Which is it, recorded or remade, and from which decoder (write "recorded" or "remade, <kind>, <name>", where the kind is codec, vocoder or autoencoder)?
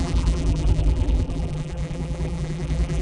remade, vocoder, BigVGAN v2